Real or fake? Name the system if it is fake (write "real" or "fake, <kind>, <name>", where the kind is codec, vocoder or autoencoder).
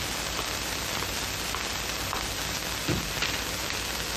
real